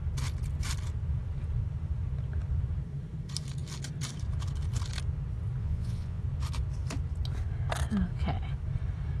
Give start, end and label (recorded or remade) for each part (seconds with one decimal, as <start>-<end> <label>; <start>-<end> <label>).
0.0-5.6 recorded; 5.6-6.2 remade; 6.2-9.2 recorded